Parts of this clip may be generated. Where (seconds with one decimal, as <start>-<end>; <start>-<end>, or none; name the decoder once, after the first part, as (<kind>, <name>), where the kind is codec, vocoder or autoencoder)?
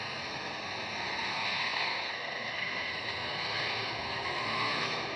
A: 0.0-5.2 (codec, SNAC)